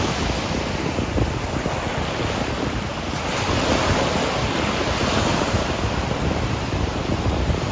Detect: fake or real real